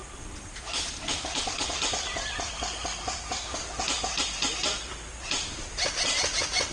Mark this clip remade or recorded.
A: recorded